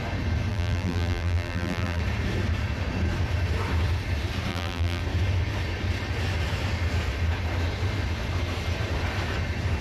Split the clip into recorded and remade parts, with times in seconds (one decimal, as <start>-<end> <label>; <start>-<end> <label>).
0.0-0.5 recorded; 0.5-2.0 remade; 2.0-4.5 recorded; 4.5-5.0 remade; 5.0-9.8 recorded